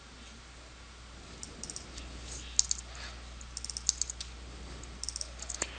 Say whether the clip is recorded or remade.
recorded